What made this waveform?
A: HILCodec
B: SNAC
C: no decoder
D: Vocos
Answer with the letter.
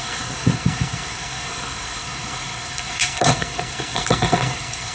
B